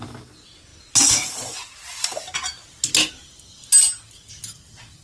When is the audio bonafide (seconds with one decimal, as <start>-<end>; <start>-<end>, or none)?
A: 0.0-5.0

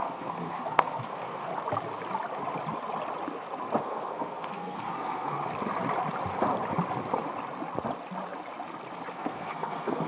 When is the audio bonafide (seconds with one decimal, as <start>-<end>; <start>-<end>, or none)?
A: 1.5-3.8; 5.5-9.1

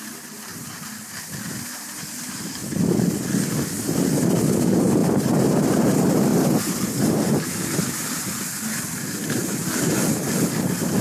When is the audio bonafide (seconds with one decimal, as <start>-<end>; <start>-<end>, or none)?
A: 0.0-2.6; 4.1-5.0; 5.6-6.3; 7.3-11.0

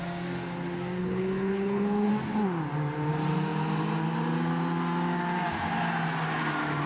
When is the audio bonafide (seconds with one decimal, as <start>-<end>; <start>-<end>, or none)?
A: 0.0-1.0; 2.1-6.9

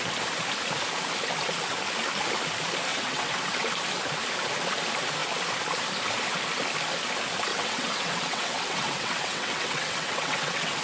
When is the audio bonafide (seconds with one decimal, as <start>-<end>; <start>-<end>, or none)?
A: 0.0-2.9; 3.7-7.5

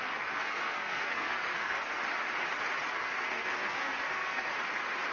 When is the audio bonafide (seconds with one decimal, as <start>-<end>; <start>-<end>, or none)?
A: 2.0-2.9; 4.5-5.1

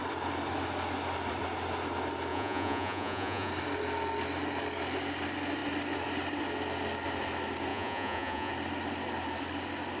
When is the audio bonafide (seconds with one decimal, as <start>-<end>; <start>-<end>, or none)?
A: 0.0-2.3; 3.5-7.7; 8.5-10.0

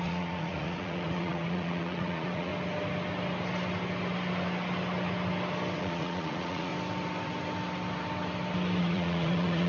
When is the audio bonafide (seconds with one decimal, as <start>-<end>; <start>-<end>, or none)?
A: 2.5-5.8; 6.7-8.8